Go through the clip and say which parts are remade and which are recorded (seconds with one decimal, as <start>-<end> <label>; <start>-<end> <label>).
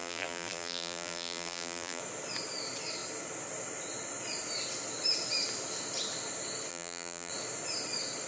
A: 0.0-2.0 remade; 2.0-6.7 recorded; 6.7-7.3 remade; 7.3-8.3 recorded